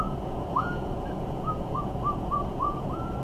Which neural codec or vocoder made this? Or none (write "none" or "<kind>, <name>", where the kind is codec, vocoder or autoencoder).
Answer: vocoder, Vocos